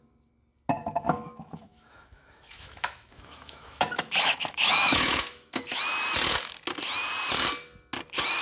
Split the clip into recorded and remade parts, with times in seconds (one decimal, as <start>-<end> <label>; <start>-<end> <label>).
0.0-0.8 recorded; 0.8-5.8 remade; 5.8-8.4 recorded